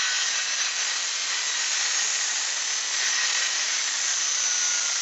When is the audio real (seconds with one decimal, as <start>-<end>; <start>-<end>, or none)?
0.0-5.0